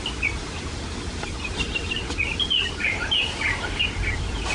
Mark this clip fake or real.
real